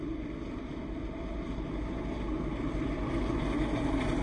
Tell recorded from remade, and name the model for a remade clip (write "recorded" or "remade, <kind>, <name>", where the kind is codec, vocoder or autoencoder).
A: recorded